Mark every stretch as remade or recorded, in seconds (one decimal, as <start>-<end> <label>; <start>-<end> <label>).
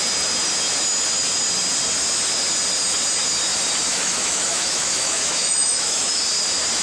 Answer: 0.0-3.9 recorded; 3.9-6.3 remade; 6.3-6.8 recorded